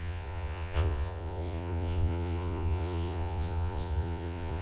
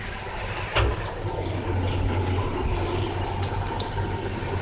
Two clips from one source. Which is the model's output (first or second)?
first